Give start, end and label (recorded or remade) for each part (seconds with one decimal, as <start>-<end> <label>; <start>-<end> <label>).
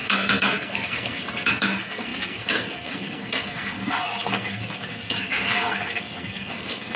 0.0-7.0 remade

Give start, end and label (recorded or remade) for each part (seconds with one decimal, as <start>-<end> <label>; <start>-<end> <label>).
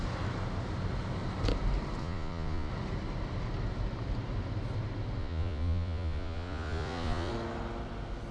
0.0-2.0 recorded; 2.0-2.7 remade; 2.7-5.2 recorded; 5.2-7.3 remade; 7.3-8.3 recorded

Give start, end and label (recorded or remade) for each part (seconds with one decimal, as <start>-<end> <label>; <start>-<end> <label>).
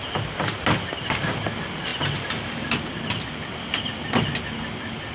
0.0-1.9 recorded; 1.9-3.0 remade; 3.0-5.1 recorded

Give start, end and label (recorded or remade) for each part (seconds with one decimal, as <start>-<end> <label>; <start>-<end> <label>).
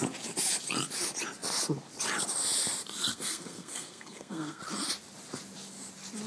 0.0-3.1 recorded; 3.1-4.6 remade; 4.6-6.3 recorded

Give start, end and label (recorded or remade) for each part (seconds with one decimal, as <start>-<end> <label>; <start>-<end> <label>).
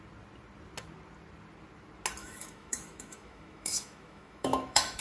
0.0-2.2 recorded; 2.2-5.0 remade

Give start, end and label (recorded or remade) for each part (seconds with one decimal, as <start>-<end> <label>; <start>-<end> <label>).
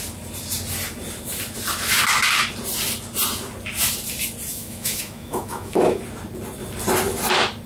0.0-4.5 recorded; 4.5-6.0 remade; 6.0-7.7 recorded